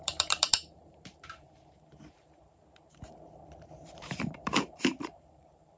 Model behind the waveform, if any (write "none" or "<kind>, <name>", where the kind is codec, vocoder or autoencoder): vocoder, BigVGAN v2